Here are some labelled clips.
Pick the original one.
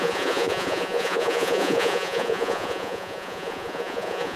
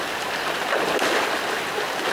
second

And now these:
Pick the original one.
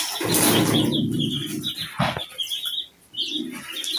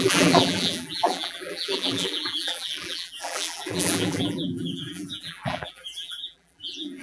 first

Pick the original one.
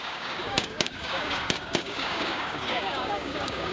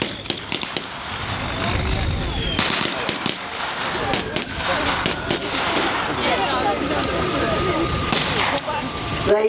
second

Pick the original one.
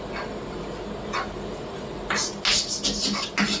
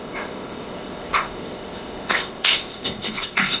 first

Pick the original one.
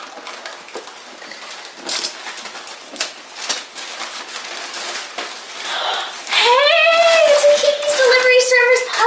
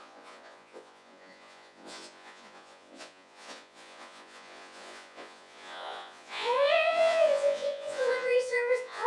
first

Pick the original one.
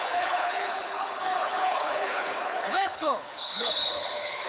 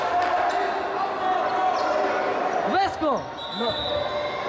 second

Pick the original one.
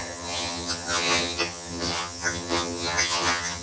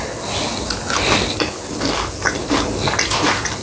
second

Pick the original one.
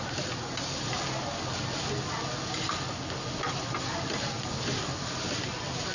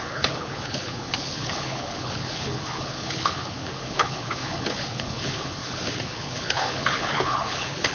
first